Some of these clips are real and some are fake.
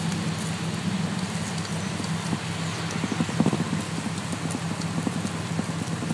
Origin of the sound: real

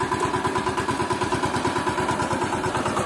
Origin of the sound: real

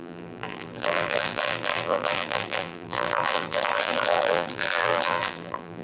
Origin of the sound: fake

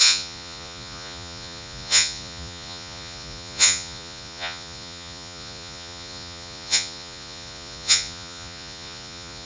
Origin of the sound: fake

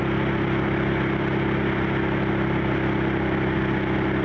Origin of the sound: real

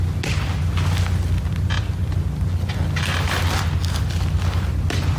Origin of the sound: real